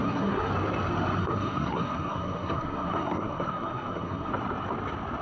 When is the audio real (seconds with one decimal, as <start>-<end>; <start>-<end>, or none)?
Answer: 0.5-1.2; 4.3-5.2